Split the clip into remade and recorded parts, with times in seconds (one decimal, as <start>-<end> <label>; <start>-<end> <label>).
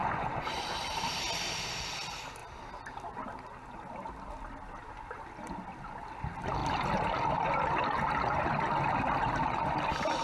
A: 0.0-0.6 remade; 0.6-10.2 recorded